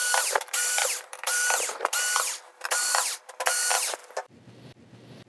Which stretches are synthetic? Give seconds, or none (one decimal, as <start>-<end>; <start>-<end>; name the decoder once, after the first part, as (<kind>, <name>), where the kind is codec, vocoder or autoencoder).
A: 0.0-1.9 (vocoder, BigVGAN v2); 2.5-3.4; 4.0-4.7